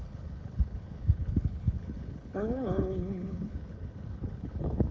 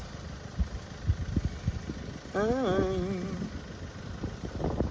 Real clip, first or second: second